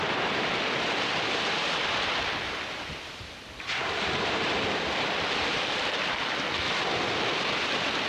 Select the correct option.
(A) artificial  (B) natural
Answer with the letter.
B